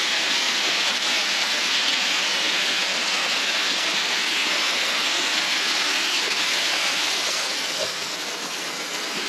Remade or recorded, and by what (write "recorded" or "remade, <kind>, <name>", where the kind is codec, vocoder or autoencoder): remade, codec, SNAC